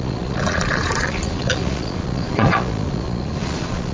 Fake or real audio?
fake